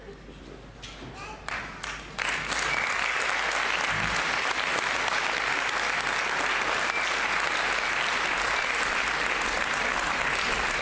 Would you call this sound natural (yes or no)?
yes